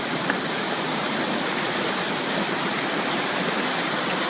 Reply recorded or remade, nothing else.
recorded